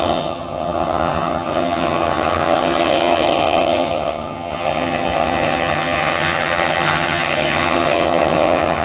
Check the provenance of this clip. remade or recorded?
remade